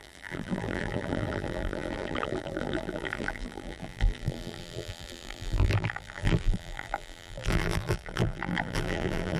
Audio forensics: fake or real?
fake